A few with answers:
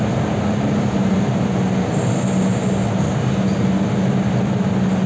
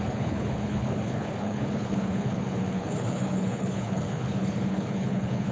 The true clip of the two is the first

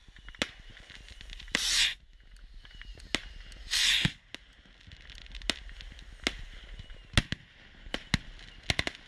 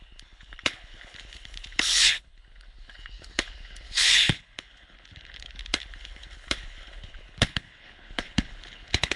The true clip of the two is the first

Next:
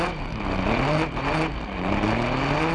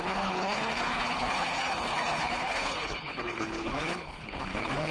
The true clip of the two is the first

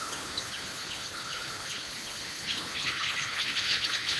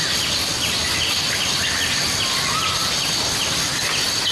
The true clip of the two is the second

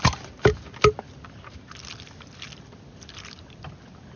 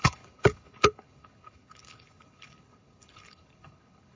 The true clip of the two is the first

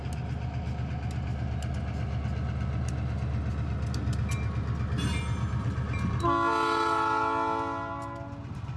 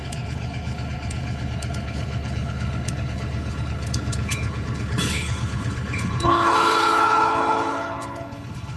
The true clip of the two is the first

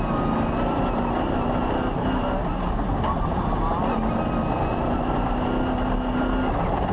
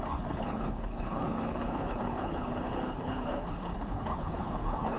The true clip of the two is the first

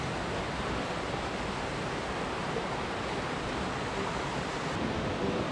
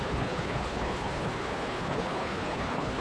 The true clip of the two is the first